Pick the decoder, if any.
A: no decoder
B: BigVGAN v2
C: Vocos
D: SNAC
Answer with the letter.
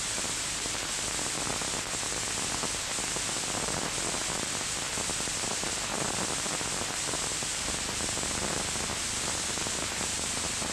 A